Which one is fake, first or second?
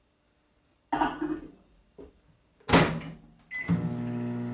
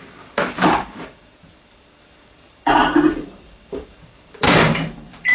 second